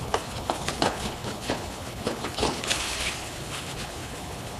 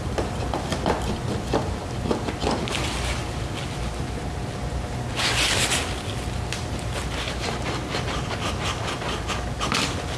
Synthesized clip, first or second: first